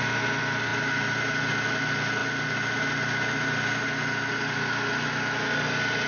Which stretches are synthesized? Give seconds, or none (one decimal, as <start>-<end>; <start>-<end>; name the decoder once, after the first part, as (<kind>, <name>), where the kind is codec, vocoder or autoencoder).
none